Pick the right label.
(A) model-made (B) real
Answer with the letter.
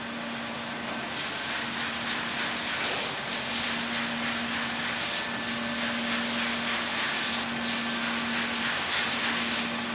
B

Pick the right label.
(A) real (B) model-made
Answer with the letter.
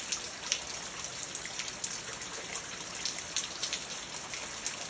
A